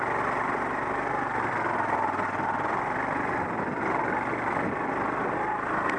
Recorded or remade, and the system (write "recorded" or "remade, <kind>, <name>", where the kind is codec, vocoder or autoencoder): recorded